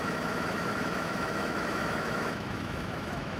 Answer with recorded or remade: remade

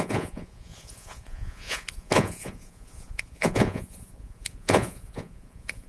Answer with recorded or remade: remade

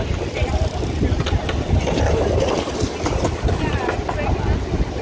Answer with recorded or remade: recorded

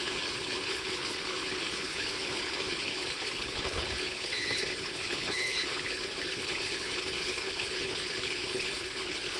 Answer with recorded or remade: remade